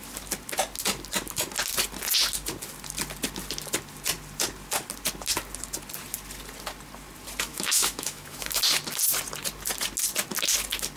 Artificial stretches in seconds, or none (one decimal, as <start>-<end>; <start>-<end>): 7.5-8.6